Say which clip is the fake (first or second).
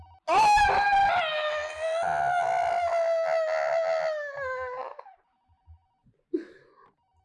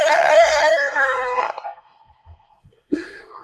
second